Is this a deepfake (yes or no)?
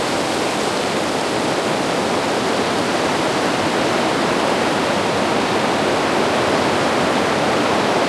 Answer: no